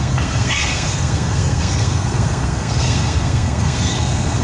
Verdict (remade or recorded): remade